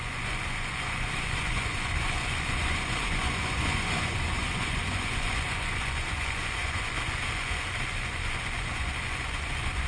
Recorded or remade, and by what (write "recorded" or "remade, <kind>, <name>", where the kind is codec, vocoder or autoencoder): remade, vocoder, Vocos